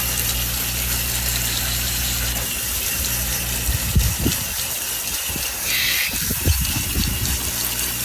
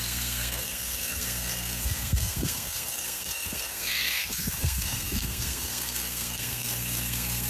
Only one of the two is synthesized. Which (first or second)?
second